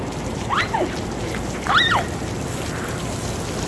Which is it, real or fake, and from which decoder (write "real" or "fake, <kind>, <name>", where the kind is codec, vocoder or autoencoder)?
real